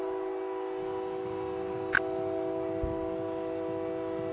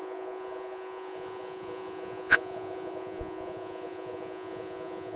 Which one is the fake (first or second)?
second